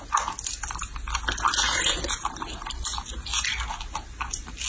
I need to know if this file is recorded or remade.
recorded